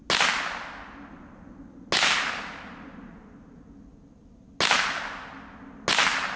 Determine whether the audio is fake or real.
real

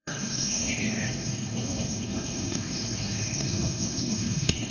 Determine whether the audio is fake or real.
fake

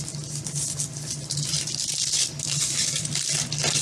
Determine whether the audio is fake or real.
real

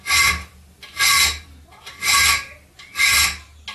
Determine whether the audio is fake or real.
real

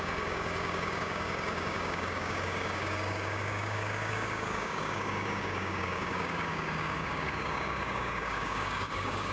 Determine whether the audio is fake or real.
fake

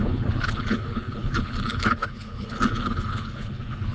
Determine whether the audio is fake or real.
fake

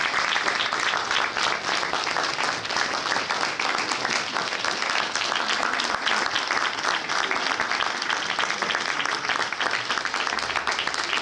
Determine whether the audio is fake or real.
real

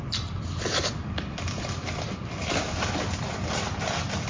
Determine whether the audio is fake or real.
real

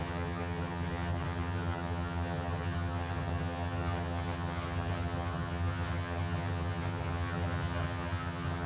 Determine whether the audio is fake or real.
fake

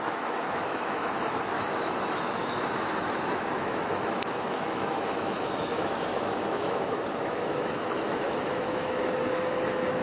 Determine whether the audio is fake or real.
fake